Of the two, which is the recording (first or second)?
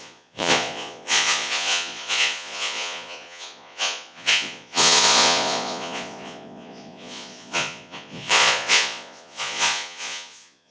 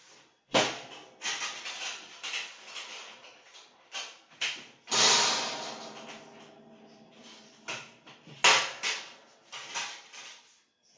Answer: second